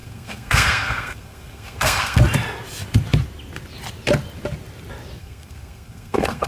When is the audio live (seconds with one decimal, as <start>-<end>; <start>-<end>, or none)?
2.2-5.2